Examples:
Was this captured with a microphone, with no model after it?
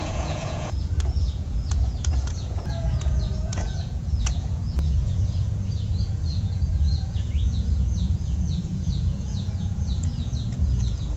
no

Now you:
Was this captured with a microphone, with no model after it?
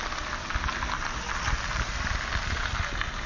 yes